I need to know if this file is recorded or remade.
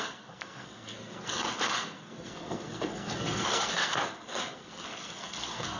remade